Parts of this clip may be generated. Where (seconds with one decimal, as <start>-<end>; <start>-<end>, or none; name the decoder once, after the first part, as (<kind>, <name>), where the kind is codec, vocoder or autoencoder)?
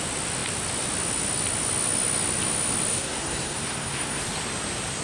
2.9-4.2 (codec, SNAC)